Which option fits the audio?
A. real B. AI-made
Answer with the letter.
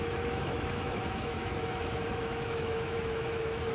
B